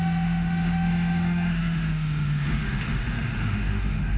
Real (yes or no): no